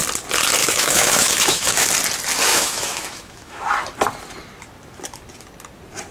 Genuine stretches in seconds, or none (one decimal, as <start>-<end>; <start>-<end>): 0.0-0.6; 1.9-2.5; 3.6-6.1